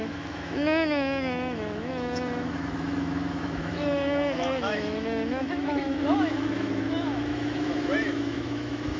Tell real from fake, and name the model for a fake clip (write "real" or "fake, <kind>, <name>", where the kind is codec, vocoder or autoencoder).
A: fake, autoencoder, DAC-VAE